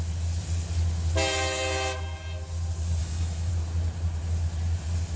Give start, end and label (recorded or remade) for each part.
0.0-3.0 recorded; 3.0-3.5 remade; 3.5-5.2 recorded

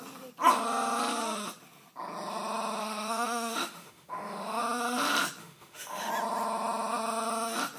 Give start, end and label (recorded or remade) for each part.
0.0-2.8 recorded; 2.8-4.6 remade; 4.6-5.4 recorded; 5.4-6.1 remade; 6.1-7.8 recorded

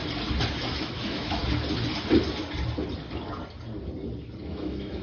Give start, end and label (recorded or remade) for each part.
0.0-0.7 recorded; 0.7-1.4 remade; 1.4-4.4 recorded; 4.4-5.0 remade

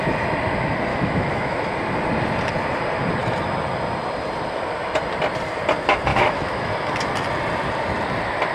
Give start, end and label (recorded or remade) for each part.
0.0-0.9 recorded; 0.9-1.6 remade; 1.6-6.1 recorded; 6.1-6.7 remade; 6.7-8.5 recorded

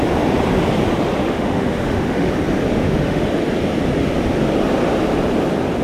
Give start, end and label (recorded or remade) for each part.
0.0-1.2 recorded; 1.2-2.3 remade; 2.3-2.7 recorded; 2.7-3.3 remade; 3.3-5.8 recorded

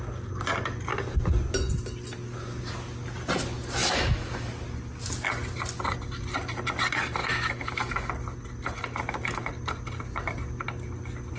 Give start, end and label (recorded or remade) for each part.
0.0-3.8 recorded; 3.8-4.5 remade; 4.5-7.2 recorded; 7.2-8.1 remade; 8.1-11.4 recorded

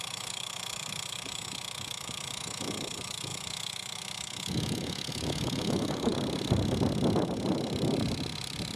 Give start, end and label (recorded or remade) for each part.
0.0-6.1 remade; 6.1-8.8 recorded

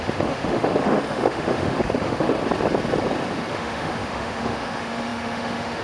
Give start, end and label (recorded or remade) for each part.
0.0-2.4 remade; 2.4-3.5 recorded; 3.5-5.8 remade